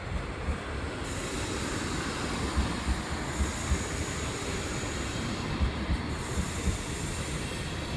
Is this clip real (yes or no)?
yes